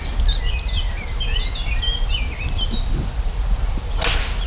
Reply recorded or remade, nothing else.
recorded